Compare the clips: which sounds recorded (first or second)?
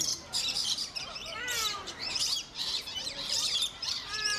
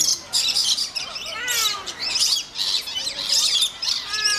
second